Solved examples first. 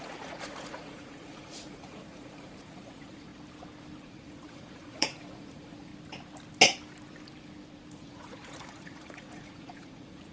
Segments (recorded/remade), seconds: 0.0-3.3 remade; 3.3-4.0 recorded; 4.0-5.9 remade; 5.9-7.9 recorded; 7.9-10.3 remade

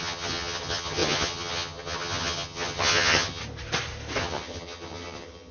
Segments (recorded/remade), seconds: 0.0-3.4 remade; 3.4-4.2 recorded; 4.2-5.5 remade